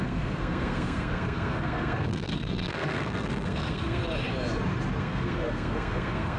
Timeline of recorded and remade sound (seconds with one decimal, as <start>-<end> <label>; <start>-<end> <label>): 0.0-4.0 remade; 4.0-5.0 recorded; 5.0-6.4 remade